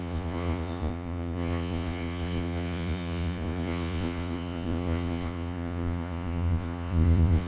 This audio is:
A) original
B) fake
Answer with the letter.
B